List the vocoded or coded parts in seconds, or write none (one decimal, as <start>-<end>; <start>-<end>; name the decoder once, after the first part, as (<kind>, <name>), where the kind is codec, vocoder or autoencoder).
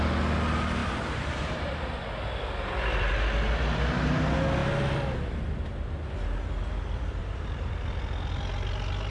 0.8-2.1 (vocoder, BigVGAN v2); 7.2-7.8